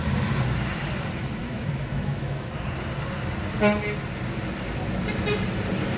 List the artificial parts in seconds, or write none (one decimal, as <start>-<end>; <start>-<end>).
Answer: 1.4-2.5